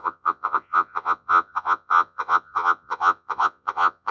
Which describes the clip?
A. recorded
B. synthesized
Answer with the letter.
B